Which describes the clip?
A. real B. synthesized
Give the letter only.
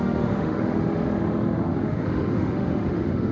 B